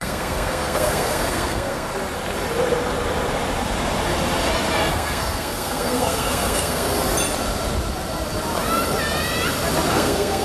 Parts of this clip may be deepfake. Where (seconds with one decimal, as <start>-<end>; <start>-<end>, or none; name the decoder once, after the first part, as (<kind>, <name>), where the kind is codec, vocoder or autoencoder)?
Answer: 0.0-1.9 (codec, SNAC); 4.9-6.9; 9.9-10.4